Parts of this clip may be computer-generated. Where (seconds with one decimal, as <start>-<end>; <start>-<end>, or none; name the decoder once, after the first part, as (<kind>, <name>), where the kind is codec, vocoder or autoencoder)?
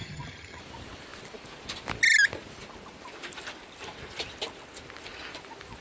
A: 0.0-0.6 (vocoder, HiFi-GAN)